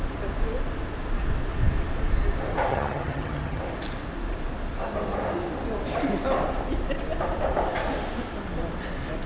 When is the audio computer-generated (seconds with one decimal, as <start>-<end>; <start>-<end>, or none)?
2.7-3.6